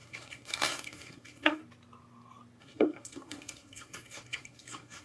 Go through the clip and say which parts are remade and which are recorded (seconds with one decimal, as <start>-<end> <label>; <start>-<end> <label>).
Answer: 0.0-1.6 remade; 1.6-2.6 recorded; 2.6-5.0 remade